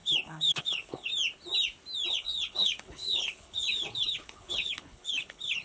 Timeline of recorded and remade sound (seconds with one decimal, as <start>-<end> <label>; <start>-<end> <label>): 0.0-1.1 remade; 1.1-2.1 recorded; 2.1-5.6 remade